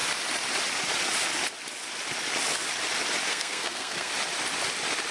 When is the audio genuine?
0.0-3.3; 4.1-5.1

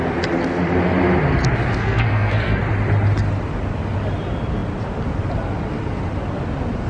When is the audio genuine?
0.0-1.8; 2.6-6.9

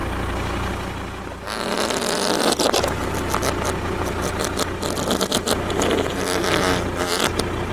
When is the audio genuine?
0.0-7.7